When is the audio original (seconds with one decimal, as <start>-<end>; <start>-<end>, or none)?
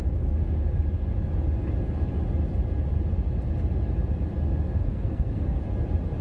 0.0-4.9; 5.6-6.2